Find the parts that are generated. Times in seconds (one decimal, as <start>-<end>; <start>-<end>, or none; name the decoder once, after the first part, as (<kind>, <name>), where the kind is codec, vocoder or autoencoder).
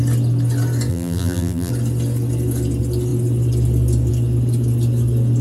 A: 0.9-1.7 (vocoder, BigVGAN v2)